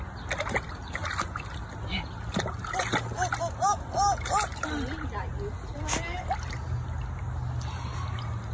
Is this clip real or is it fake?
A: real